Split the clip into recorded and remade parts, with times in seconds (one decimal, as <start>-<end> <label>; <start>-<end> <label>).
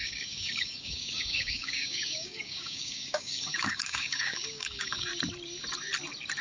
0.0-5.1 remade; 5.1-6.4 recorded